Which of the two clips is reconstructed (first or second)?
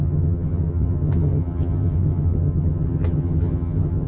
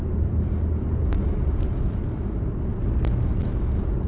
first